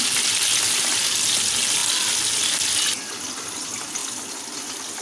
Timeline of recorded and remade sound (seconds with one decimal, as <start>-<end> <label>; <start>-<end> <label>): 0.0-5.0 recorded